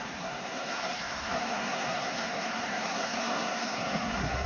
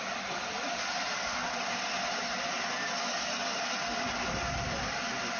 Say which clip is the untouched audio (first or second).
second